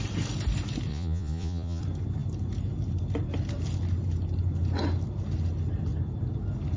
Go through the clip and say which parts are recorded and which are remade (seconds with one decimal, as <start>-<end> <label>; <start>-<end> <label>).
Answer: 0.0-0.9 recorded; 0.9-1.8 remade; 1.8-6.8 recorded